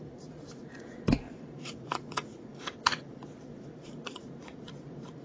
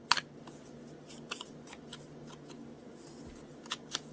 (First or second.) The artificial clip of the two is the first